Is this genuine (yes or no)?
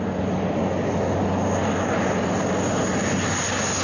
yes